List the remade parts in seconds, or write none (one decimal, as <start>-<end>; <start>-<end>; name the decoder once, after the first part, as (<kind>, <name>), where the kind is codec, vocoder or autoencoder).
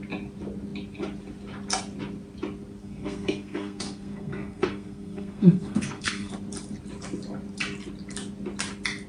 2.8-6.3 (codec, SNAC)